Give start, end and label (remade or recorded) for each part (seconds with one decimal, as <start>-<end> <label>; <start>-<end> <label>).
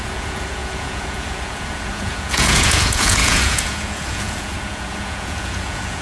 0.0-6.0 remade